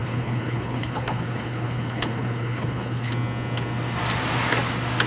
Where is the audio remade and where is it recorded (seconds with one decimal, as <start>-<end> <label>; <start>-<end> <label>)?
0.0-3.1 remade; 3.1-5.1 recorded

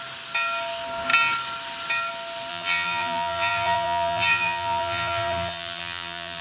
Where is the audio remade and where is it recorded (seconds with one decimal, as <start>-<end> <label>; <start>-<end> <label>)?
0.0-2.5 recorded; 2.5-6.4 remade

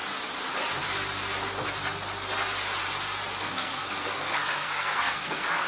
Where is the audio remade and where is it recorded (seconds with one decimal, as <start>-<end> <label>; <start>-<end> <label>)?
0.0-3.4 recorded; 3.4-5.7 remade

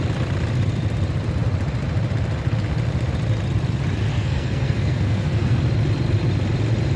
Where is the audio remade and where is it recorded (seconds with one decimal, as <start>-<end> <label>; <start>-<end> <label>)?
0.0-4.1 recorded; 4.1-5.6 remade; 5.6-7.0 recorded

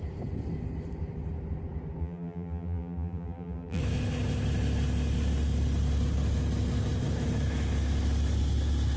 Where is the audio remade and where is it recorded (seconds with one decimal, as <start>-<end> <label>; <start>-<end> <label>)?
0.0-2.0 recorded; 2.0-3.8 remade; 3.8-9.0 recorded

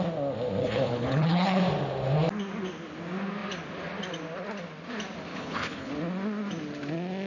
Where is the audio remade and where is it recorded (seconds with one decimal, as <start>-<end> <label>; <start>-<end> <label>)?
0.0-0.6 recorded; 0.6-1.6 remade; 1.6-5.3 recorded; 5.3-5.9 remade; 5.9-7.3 recorded

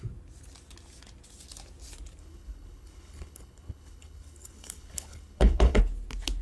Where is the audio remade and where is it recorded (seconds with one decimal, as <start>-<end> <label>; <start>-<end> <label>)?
0.0-2.2 recorded; 2.2-5.8 remade; 5.8-6.4 recorded

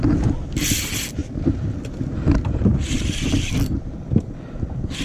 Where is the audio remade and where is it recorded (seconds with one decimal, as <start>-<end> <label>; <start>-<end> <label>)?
0.0-5.0 recorded